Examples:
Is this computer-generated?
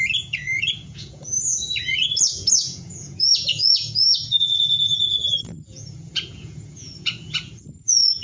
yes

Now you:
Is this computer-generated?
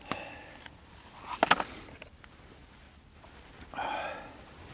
no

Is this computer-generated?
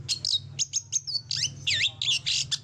no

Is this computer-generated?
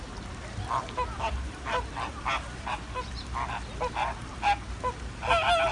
no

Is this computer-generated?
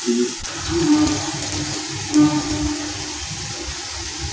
no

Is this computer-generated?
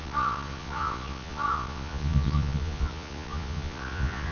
yes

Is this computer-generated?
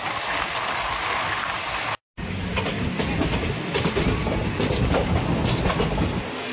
no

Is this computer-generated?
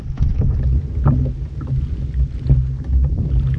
no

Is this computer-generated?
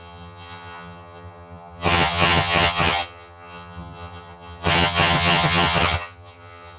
yes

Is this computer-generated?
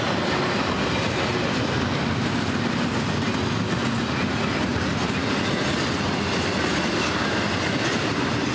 no